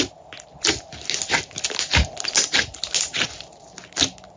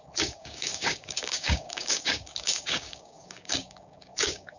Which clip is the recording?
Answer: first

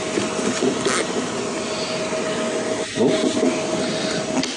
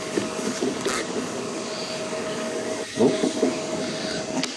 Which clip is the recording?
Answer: first